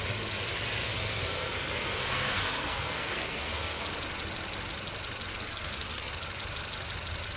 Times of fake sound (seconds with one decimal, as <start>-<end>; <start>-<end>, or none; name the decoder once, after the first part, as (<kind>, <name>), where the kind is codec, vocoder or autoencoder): 0.8-3.8 (codec, SNAC); 5.3-6.1